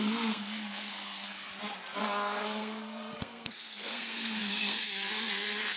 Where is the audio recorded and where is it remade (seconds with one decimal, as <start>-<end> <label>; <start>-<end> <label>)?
0.0-1.5 remade; 1.5-2.0 recorded; 2.0-5.8 remade